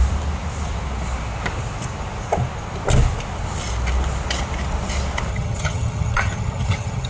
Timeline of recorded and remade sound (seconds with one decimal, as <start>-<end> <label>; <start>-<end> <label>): 0.0-5.3 recorded; 5.3-7.1 remade